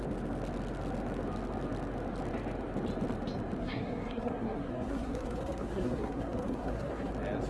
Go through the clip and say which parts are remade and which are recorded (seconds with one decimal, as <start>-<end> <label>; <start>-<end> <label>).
0.0-3.6 recorded; 3.6-7.1 remade; 7.1-7.5 recorded